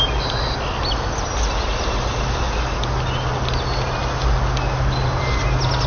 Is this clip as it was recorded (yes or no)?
yes